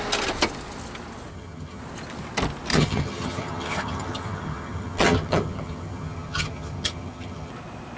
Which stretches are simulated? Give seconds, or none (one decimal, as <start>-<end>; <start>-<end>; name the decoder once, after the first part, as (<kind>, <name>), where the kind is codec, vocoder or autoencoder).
1.3-1.8 (vocoder, HiFi-GAN); 2.7-7.5